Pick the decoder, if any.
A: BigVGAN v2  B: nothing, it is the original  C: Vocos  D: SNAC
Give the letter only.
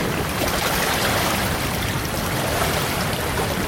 A